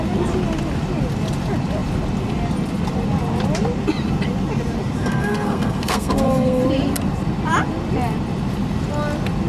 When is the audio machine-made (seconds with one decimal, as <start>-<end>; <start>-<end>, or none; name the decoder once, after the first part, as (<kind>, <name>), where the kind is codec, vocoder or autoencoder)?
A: 5.0-6.6 (codec, SNAC)